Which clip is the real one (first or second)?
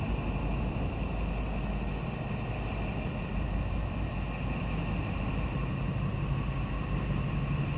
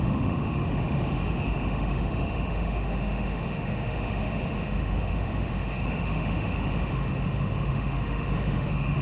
first